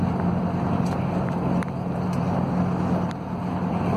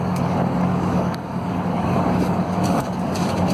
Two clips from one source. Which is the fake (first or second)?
second